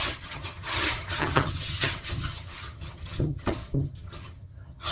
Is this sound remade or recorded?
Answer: remade